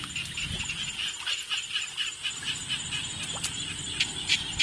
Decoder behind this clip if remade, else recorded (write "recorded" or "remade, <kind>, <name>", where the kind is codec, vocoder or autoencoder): recorded